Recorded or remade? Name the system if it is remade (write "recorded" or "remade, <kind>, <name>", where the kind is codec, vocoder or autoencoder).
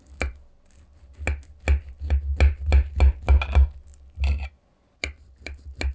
recorded